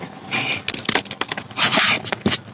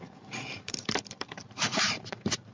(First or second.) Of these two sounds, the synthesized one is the second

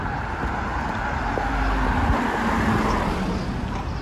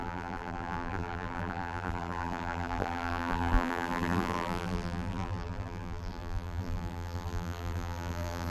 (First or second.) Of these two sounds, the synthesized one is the second